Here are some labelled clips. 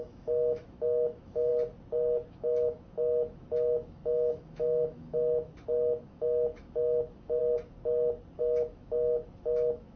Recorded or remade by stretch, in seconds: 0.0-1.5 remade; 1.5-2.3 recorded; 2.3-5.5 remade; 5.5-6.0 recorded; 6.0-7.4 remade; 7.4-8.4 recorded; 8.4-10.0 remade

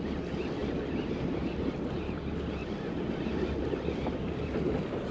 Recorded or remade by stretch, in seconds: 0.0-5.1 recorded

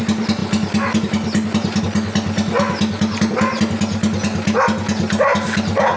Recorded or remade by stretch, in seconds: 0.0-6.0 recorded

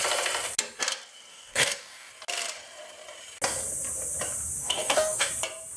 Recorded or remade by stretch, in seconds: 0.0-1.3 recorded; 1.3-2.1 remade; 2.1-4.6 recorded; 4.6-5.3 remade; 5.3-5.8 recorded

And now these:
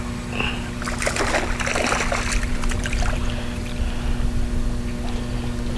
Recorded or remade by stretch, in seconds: 0.0-5.8 recorded